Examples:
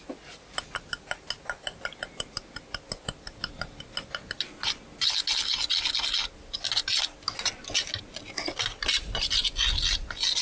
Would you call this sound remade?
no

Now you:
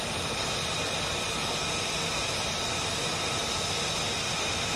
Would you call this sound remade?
no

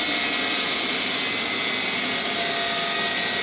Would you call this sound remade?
no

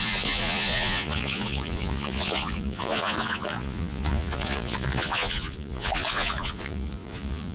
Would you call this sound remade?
yes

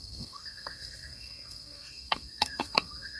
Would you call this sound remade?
yes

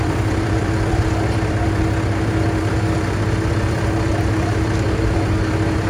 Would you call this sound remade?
yes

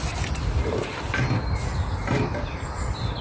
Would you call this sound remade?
no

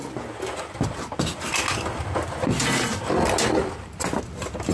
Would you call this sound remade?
no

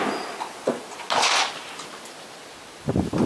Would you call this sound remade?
no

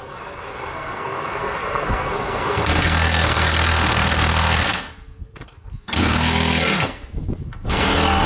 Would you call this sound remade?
yes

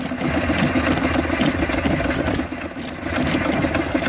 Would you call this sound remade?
no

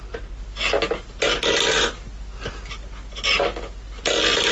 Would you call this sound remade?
no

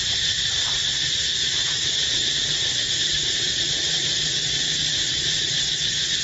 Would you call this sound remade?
yes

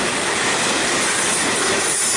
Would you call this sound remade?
no